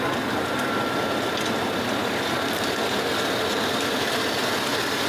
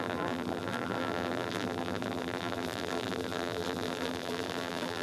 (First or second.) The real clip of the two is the first